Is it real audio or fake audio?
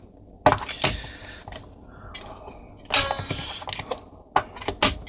real